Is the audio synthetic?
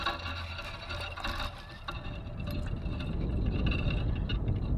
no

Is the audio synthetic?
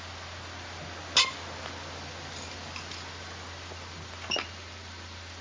no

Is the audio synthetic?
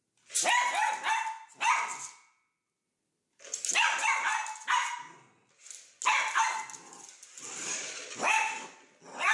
no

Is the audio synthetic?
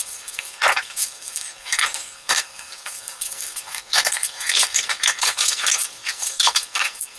yes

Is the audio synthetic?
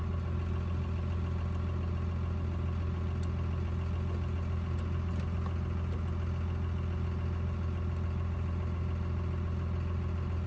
no